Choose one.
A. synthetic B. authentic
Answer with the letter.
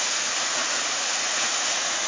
A